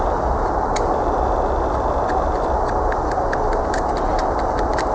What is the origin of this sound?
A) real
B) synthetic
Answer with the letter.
A